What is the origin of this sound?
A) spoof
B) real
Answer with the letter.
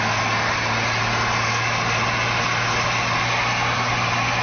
B